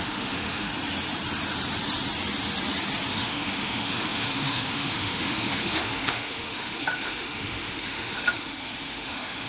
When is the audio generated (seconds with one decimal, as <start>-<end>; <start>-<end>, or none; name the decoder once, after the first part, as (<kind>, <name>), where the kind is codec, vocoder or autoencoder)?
0.0-0.7 (autoencoder, DAC-VAE); 3.1-9.5